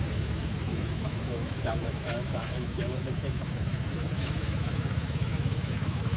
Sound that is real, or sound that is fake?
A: fake